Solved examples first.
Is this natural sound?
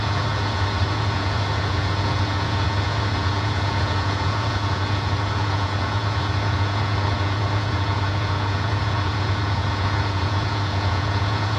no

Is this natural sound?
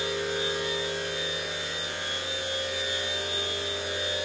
yes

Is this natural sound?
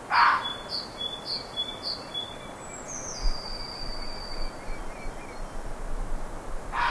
yes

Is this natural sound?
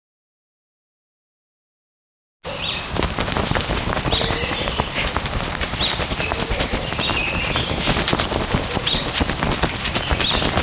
yes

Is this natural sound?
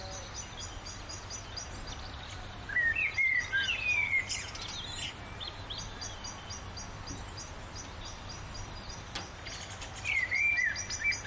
yes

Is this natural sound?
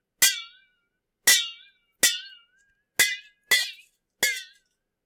yes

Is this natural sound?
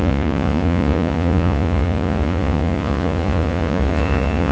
no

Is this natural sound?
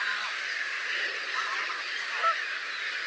yes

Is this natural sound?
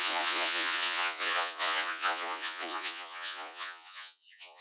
no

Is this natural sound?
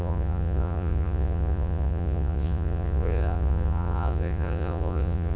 no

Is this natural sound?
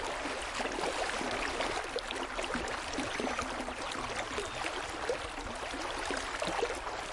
yes